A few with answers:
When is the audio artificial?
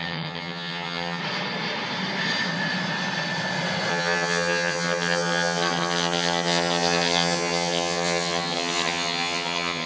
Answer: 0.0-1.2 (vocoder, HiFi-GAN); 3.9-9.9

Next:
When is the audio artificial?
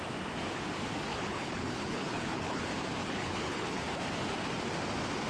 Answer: 1.1-2.6 (codec, HILCodec); 3.0-3.8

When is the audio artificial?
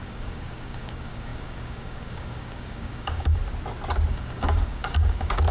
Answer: 0.0-3.4 (codec, DAC); 4.1-5.5